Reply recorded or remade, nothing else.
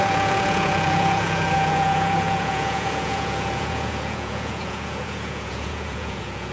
remade